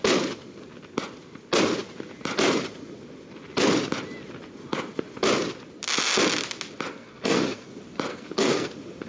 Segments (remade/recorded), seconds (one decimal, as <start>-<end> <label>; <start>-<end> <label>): 0.0-6.9 recorded; 6.9-7.7 remade; 7.7-8.1 recorded; 8.1-8.7 remade; 8.7-9.1 recorded